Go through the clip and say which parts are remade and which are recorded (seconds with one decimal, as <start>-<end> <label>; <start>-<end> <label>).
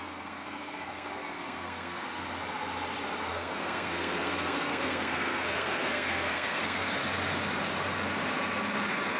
0.0-2.2 remade; 2.2-3.3 recorded; 3.3-7.0 remade; 7.0-9.2 recorded